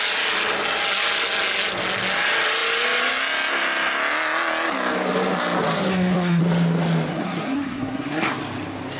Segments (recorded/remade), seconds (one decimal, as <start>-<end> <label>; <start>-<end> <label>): 0.0-5.9 recorded; 5.9-6.4 remade; 6.4-7.1 recorded; 7.1-8.4 remade; 8.4-9.0 recorded